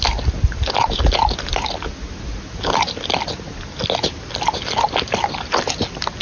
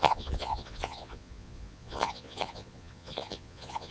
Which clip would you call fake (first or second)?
second